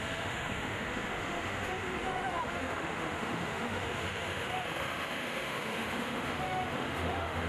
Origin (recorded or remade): remade